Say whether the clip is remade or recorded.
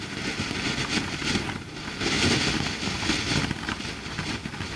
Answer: recorded